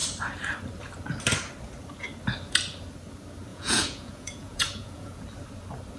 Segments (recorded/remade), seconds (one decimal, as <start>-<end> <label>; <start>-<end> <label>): 0.0-3.5 recorded; 3.5-5.2 remade; 5.2-6.0 recorded